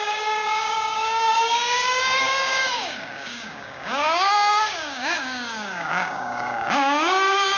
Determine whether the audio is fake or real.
fake